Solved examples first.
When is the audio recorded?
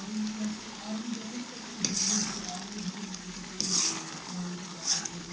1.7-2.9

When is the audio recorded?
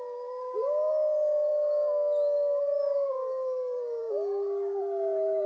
0.0-5.5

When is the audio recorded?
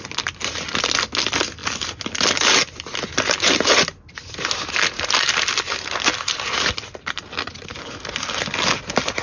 0.0-9.2